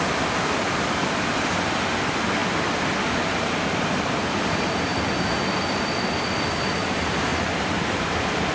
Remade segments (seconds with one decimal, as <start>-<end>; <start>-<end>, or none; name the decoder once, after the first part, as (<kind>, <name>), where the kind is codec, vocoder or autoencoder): 0.0-2.4 (vocoder, BigVGAN v2); 3.3-4.9; 6.1-8.5